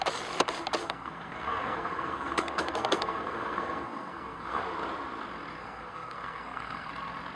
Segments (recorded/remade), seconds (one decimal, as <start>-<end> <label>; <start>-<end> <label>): 0.0-0.8 recorded; 0.8-4.6 remade; 4.6-5.6 recorded; 5.6-6.9 remade; 6.9-7.4 recorded